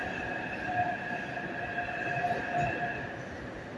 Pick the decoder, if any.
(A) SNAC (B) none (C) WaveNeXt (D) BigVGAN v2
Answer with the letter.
B